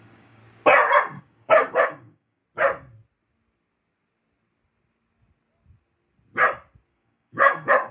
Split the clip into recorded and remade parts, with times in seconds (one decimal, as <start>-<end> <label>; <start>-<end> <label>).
0.0-0.4 remade; 0.4-1.2 recorded; 1.2-2.4 remade; 2.4-6.9 recorded; 6.9-7.9 remade